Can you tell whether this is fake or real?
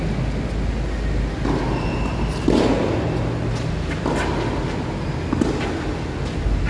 real